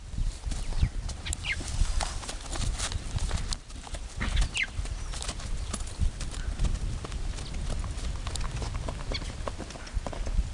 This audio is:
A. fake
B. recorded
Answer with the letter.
B